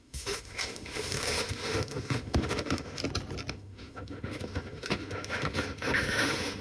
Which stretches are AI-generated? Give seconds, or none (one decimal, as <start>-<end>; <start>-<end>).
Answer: 0.0-3.0; 3.5-6.6